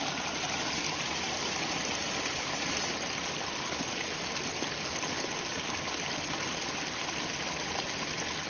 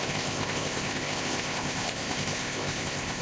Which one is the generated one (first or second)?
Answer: second